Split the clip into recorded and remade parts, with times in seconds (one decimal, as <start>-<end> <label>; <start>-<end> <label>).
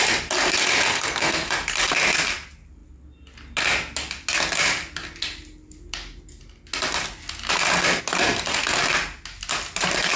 0.0-0.9 recorded; 0.9-1.5 remade; 1.5-10.2 recorded